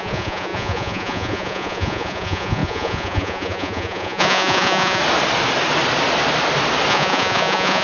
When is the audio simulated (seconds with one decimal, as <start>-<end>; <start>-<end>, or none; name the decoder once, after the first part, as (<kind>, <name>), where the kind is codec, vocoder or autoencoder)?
0.0-5.0 (vocoder, Vocos); 6.9-7.8